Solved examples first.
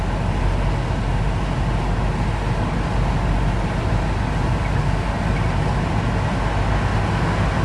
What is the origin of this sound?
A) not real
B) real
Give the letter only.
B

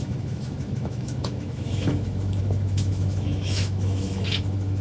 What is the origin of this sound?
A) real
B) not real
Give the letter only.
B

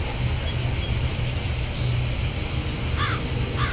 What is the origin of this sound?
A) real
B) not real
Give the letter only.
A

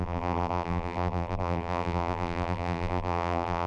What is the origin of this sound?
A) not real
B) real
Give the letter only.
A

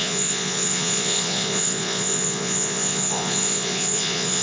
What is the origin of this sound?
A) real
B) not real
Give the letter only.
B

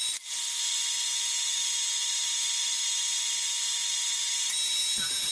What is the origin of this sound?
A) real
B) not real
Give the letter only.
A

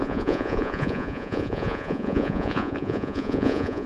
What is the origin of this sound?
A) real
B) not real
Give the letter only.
B